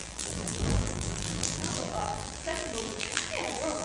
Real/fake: fake